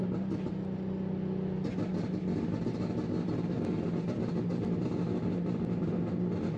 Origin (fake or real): real